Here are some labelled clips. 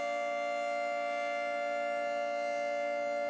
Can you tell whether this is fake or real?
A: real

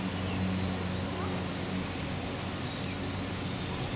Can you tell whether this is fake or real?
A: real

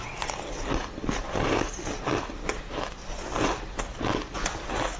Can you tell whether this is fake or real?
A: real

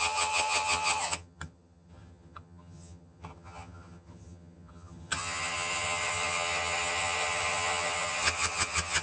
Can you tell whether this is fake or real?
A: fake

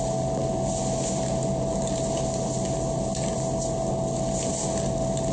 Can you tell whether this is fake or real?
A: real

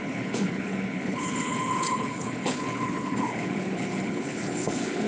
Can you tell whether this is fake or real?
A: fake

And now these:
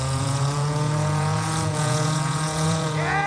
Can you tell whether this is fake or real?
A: fake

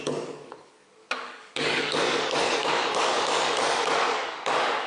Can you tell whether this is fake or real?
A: fake